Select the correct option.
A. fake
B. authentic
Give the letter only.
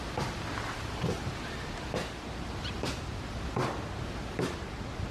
B